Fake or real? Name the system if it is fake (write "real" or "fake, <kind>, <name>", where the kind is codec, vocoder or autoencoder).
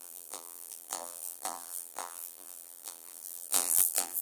fake, vocoder, BigVGAN v2